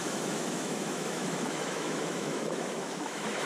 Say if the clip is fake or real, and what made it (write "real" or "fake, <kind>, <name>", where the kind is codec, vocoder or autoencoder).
fake, autoencoder, DAC-VAE